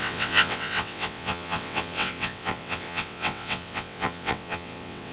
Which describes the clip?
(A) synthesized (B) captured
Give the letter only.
A